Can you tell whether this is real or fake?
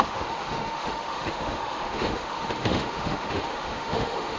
fake